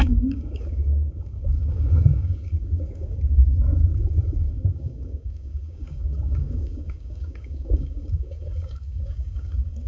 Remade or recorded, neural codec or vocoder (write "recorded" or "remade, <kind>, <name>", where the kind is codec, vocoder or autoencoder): remade, codec, DAC